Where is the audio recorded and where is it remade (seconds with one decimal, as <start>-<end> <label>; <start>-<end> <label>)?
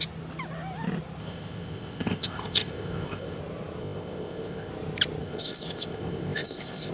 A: 0.0-1.2 recorded; 1.2-3.4 remade; 3.4-3.8 recorded; 3.8-4.7 remade; 4.7-5.2 recorded; 5.2-6.9 remade